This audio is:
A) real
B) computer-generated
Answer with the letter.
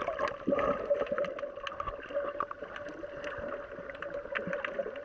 A